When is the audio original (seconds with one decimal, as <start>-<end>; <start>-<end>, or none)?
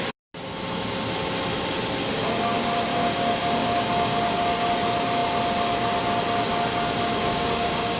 0.0-2.9; 4.7-7.1